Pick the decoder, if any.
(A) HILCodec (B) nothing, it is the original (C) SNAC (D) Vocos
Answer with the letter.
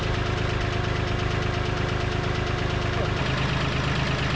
B